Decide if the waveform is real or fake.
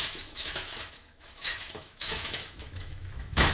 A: fake